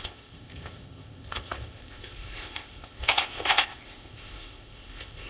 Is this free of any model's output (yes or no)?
no